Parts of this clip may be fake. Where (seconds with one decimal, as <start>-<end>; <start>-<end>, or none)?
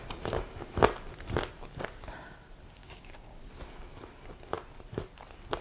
2.8-3.4